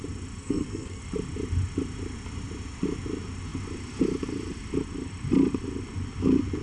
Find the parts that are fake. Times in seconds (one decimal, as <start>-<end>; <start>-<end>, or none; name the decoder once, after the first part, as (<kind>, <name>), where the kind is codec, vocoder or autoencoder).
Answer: 0.4-1.0 (codec, SNAC)